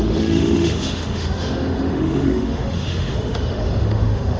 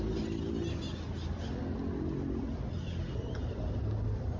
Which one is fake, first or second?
first